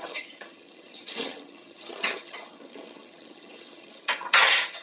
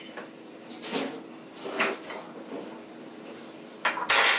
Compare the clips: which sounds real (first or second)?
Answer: second